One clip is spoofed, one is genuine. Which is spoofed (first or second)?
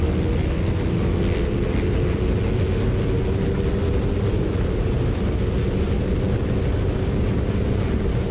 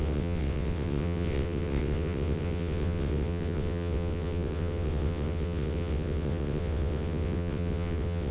second